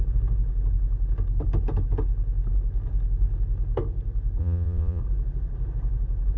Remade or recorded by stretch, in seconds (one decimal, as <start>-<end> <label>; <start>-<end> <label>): 0.0-4.4 recorded; 4.4-5.0 remade; 5.0-6.4 recorded